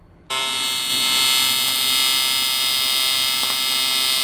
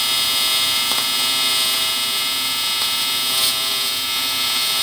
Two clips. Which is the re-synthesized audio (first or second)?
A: second